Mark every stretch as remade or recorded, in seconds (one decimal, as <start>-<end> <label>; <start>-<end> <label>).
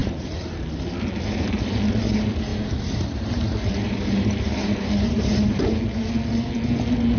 0.0-0.6 remade; 0.6-2.5 recorded; 2.5-5.6 remade; 5.6-7.2 recorded